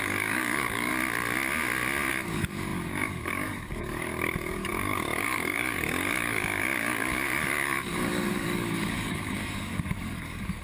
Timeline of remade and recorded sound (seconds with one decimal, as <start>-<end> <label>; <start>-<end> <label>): 0.0-0.9 remade; 0.9-2.1 recorded; 2.1-10.6 remade